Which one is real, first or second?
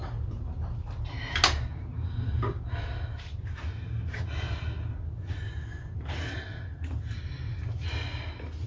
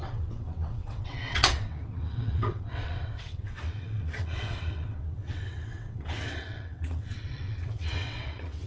first